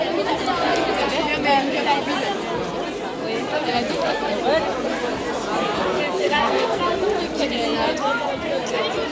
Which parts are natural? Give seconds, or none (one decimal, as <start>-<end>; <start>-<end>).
0.0-6.2; 6.8-9.1